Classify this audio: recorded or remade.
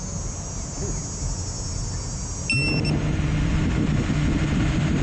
recorded